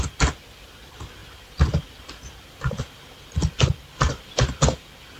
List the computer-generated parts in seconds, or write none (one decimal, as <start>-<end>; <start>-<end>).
none